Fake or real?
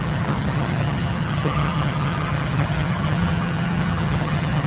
fake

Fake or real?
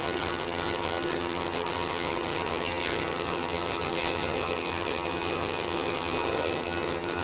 fake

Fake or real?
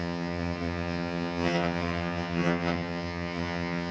fake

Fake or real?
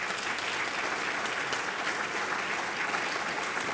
real